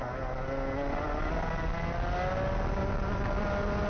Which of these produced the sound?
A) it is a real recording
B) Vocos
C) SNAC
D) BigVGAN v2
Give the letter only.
A